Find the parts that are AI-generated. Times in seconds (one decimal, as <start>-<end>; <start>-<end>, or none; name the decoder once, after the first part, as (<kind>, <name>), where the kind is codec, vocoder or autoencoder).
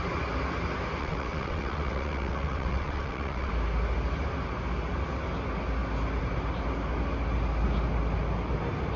1.0-3.5 (vocoder, WaveNeXt)